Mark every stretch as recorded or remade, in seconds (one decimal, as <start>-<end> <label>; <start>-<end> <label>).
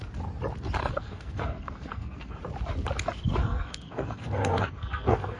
0.0-0.8 recorded; 0.8-2.4 remade; 2.4-3.4 recorded; 3.4-5.4 remade